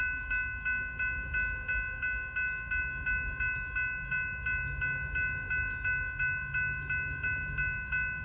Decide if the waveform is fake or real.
real